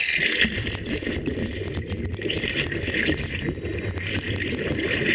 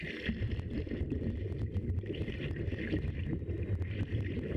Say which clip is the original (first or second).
first